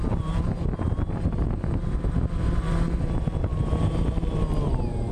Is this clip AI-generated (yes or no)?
no